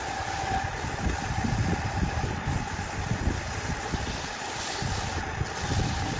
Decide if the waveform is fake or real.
real